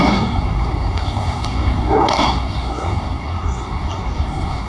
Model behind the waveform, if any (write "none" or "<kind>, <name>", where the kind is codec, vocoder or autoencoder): codec, SNAC